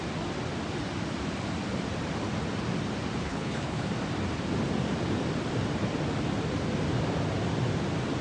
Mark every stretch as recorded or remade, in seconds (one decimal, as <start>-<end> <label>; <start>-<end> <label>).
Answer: 0.0-3.2 recorded; 3.2-3.9 remade; 3.9-8.2 recorded